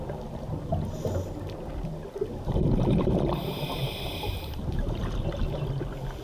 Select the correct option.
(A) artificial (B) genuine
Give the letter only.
B